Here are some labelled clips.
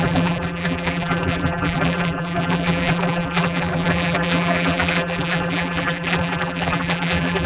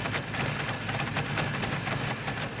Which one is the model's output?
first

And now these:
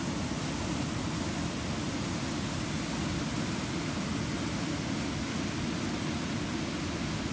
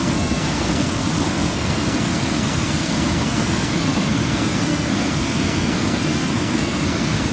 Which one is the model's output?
second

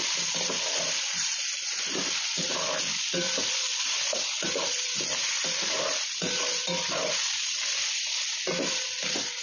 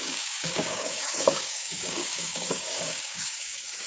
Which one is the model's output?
second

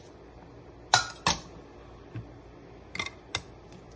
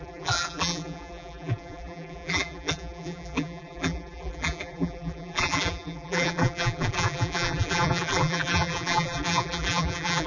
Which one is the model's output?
second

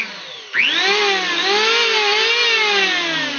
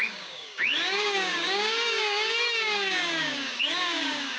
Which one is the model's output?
second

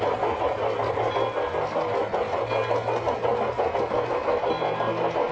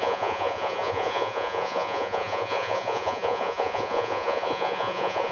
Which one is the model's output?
second